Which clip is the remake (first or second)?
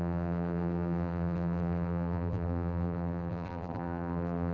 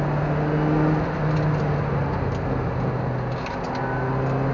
first